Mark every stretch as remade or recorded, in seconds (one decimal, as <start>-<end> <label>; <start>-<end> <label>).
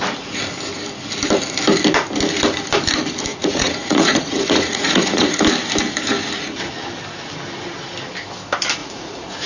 0.0-3.3 recorded; 3.3-5.4 remade; 5.4-8.8 recorded; 8.8-9.5 remade